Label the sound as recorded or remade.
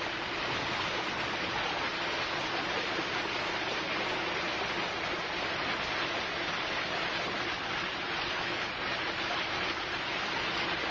recorded